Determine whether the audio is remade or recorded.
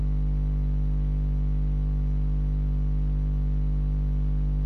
recorded